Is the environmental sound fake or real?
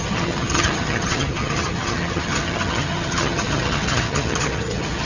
fake